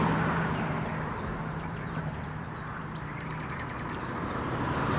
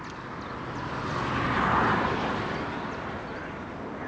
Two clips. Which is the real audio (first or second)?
second